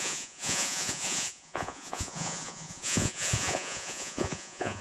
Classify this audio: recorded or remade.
remade